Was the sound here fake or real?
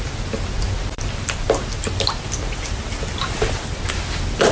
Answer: real